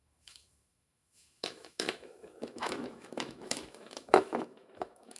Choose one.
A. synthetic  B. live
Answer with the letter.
A